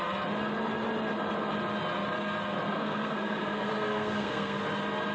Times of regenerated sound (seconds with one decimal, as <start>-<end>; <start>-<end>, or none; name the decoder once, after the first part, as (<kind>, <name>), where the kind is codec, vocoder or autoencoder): 2.7-4.6 (codec, SNAC)

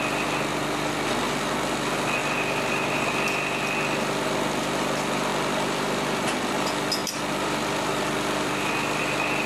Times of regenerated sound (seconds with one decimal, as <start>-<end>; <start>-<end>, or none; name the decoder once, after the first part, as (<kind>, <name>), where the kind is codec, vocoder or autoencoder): 2.2-2.9 (vocoder, BigVGAN v2); 5.3-6.5; 7.0-9.0

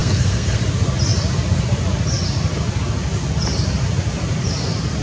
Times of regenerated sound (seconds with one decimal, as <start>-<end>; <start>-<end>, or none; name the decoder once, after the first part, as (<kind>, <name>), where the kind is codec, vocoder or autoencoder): 0.0-0.6 (codec, SNAC)

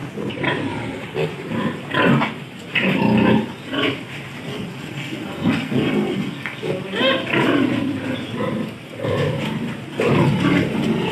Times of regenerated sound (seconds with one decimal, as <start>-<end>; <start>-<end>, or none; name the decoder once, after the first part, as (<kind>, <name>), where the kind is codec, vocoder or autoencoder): 4.5-6.7 (codec, SNAC)

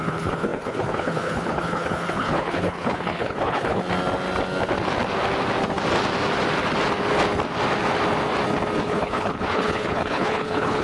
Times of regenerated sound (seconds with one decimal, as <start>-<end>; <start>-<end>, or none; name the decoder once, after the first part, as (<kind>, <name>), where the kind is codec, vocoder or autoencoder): 0.0-3.8 (codec, HILCodec); 8.8-10.8

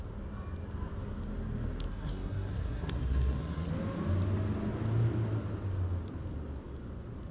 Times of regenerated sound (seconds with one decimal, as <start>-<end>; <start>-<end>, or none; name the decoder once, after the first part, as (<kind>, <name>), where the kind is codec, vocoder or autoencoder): 1.9-3.7 (codec, SNAC)

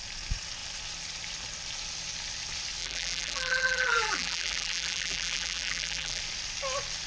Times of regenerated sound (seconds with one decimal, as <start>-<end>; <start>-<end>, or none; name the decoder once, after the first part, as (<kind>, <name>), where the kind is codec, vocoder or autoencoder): 2.8-6.2 (vocoder, BigVGAN v2)